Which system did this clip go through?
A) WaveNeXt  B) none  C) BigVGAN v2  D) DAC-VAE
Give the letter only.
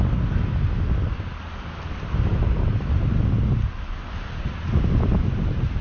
B